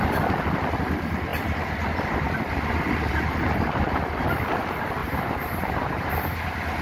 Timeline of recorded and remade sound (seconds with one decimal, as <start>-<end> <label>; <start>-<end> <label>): 0.0-5.0 recorded; 5.0-6.1 remade; 6.1-6.8 recorded